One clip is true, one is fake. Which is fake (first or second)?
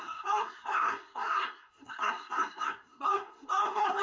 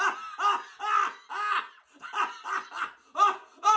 first